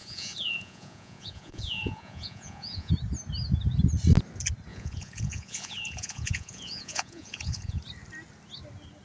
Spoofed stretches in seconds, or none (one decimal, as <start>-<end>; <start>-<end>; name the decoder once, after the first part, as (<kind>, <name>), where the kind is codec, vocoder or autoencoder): 0.0-2.9 (vocoder, Vocos); 4.7-7.8